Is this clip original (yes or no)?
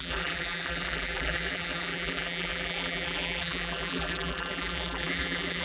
no